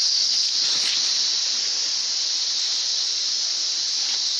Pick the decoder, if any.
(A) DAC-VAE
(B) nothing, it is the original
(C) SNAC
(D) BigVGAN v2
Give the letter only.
B